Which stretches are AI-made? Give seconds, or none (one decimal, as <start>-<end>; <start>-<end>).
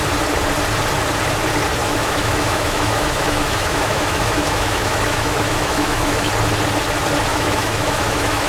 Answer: 1.8-6.3; 7.3-8.5